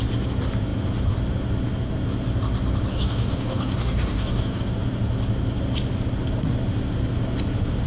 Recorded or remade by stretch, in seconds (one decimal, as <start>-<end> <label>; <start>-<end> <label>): 0.0-2.9 recorded; 2.9-4.6 remade; 4.6-7.9 recorded